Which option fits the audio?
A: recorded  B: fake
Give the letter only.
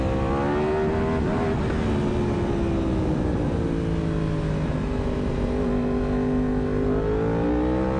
A